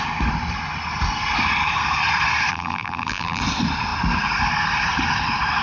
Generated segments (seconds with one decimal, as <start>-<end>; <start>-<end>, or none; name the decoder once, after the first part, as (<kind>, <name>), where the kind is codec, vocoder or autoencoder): 2.5-3.4 (vocoder, BigVGAN v2)